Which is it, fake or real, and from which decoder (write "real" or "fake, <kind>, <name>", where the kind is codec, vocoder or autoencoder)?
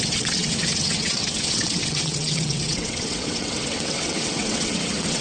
fake, vocoder, WaveNeXt